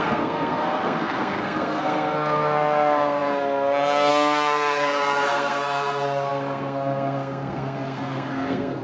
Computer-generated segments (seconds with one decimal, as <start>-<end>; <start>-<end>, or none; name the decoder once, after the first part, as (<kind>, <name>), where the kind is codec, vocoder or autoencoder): 0.0-8.8 (codec, SNAC)